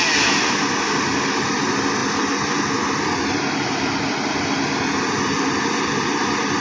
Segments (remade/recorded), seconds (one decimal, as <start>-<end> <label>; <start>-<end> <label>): 0.0-6.6 recorded